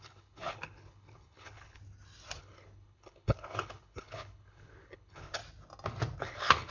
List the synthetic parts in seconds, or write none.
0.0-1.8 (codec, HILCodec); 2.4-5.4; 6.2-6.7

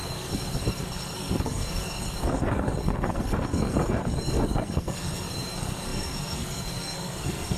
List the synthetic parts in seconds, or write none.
0.0-7.6 (codec, SNAC)

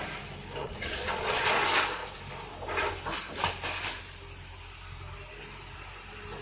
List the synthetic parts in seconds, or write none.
0.6-1.5 (vocoder, Vocos)

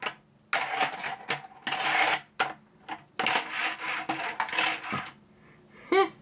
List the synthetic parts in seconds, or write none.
3.6-4.3 (codec, DAC)